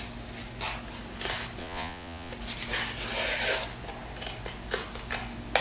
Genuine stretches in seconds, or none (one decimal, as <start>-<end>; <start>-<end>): 0.0-1.6; 2.3-5.6

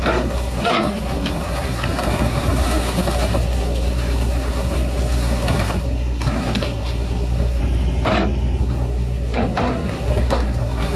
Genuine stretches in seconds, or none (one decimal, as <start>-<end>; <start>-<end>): 7.6-8.6

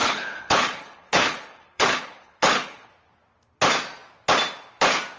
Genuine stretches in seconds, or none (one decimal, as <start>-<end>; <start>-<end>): 2.9-5.2

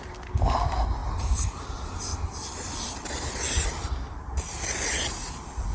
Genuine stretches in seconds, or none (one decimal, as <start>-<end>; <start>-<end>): 0.0-5.7

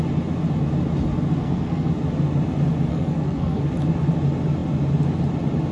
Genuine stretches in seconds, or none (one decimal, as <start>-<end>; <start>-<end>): 0.0-1.4; 1.9-2.9; 3.6-5.7

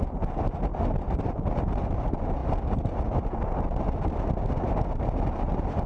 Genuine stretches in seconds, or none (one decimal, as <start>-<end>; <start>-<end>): 0.0-5.9

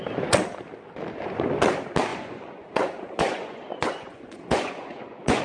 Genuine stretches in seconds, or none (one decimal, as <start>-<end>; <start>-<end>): 0.0-2.1